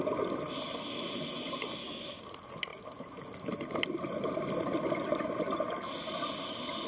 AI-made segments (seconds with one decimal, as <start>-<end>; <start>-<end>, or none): 1.8-2.3

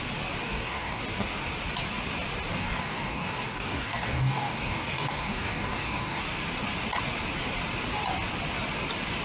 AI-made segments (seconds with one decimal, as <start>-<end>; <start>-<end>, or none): 0.4-1.0; 2.5-6.2

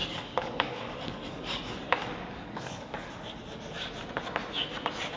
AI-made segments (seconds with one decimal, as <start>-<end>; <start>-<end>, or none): 0.0-3.1

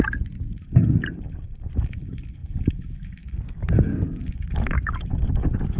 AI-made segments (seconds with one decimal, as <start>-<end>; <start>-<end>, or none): 3.9-4.9

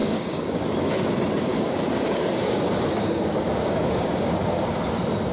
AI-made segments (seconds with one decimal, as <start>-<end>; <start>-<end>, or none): 0.0-0.7; 1.5-4.4